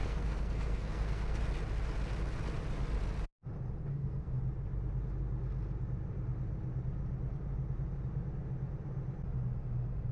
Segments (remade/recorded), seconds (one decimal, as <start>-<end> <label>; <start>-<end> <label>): 0.0-1.4 remade; 1.4-3.9 recorded; 3.9-4.4 remade; 4.4-10.1 recorded